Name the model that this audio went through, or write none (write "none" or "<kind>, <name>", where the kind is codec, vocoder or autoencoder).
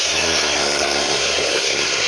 codec, SNAC